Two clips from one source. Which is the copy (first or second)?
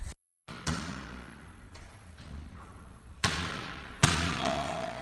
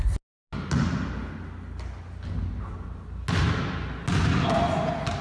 first